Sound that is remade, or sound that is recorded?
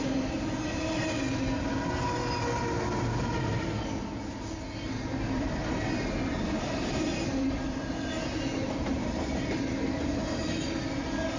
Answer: recorded